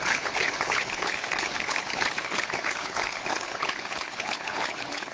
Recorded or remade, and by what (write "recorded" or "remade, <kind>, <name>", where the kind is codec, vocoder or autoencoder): remade, codec, HILCodec